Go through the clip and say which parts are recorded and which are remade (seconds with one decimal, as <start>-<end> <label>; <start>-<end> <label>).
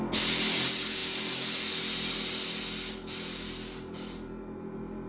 0.0-5.1 recorded